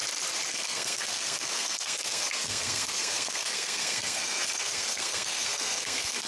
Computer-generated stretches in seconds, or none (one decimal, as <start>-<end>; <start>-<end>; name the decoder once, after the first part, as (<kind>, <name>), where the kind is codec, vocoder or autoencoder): 0.5-6.3 (codec, SNAC)